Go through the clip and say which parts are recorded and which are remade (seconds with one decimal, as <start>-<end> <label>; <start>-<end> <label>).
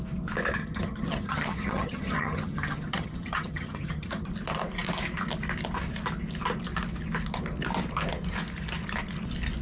0.0-0.6 recorded; 0.6-4.3 remade; 4.3-9.6 recorded